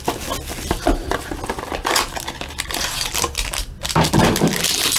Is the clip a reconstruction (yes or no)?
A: no